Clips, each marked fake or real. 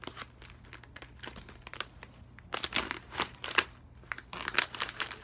real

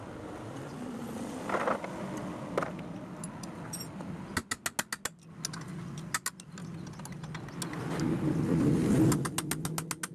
real